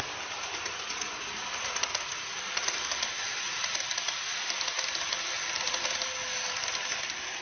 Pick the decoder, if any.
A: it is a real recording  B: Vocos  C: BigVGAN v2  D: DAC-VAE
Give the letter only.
A